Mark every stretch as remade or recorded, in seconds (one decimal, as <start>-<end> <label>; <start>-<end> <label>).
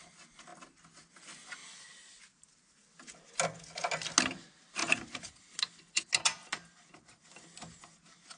0.0-8.4 recorded